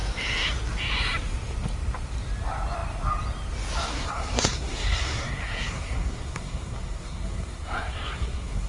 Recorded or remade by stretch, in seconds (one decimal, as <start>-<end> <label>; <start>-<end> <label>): 0.0-3.9 recorded; 3.9-8.7 remade